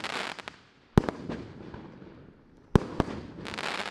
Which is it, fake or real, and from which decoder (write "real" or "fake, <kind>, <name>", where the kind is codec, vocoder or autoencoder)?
real